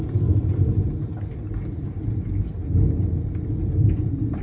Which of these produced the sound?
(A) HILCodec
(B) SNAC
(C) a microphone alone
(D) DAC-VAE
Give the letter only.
C